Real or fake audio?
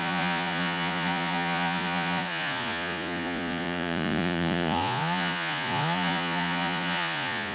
fake